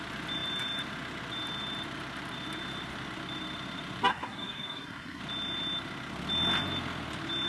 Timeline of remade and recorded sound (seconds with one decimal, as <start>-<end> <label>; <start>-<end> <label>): 0.0-4.1 recorded; 4.1-5.2 remade; 5.2-7.5 recorded